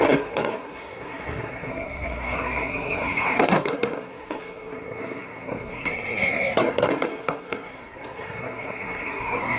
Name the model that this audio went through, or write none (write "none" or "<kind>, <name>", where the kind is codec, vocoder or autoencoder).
codec, SNAC